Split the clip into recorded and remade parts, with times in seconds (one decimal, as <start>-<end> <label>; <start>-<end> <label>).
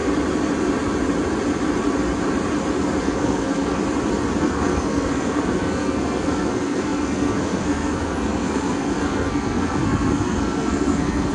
0.0-3.0 recorded; 3.0-3.8 remade; 3.8-4.4 recorded; 4.4-11.3 remade